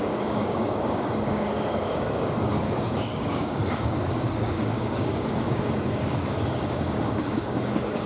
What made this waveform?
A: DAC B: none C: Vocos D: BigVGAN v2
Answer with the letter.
A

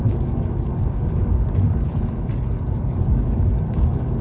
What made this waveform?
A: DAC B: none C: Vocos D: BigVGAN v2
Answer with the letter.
A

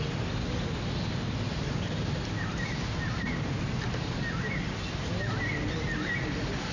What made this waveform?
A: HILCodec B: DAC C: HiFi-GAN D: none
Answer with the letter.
D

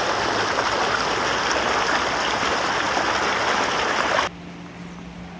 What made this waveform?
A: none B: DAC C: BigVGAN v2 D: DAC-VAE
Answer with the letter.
A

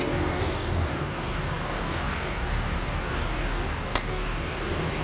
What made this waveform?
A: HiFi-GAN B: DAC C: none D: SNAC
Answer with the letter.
B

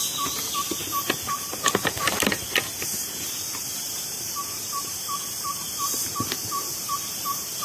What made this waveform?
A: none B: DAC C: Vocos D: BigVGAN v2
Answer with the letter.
A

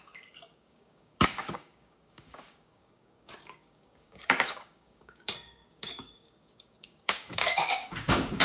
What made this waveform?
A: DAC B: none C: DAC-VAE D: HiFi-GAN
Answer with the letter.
A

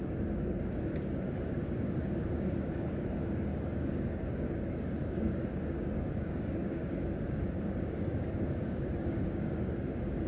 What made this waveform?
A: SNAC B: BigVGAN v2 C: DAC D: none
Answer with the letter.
C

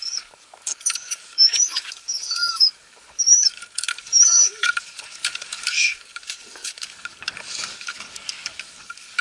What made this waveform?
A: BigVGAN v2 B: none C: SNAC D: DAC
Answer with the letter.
D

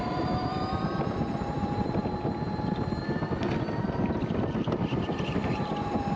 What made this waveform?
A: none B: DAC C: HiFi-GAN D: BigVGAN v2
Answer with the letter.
A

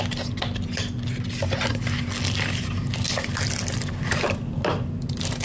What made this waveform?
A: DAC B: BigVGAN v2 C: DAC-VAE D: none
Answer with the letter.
D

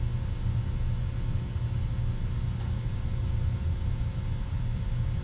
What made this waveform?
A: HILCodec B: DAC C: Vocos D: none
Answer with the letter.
D